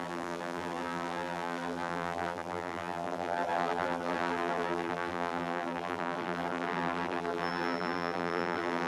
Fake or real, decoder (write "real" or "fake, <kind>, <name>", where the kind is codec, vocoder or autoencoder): fake, vocoder, BigVGAN v2